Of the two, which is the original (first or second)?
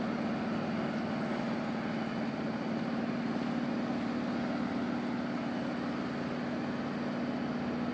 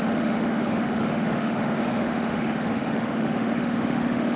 first